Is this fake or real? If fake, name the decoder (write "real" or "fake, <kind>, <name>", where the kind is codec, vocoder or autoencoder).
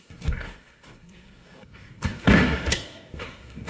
fake, codec, SNAC